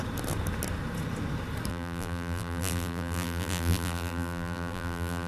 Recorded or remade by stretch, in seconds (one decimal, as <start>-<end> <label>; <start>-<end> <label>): 0.0-1.7 recorded; 1.7-5.3 remade